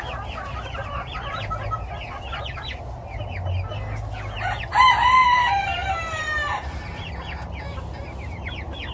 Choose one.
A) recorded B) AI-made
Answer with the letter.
A